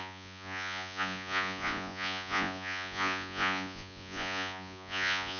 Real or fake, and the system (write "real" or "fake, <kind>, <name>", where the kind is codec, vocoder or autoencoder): fake, vocoder, Vocos